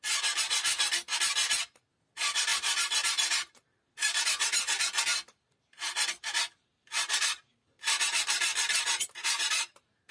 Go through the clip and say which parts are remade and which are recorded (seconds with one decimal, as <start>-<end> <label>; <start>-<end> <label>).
0.0-2.5 recorded; 2.5-4.2 remade; 4.2-5.1 recorded; 5.1-10.1 remade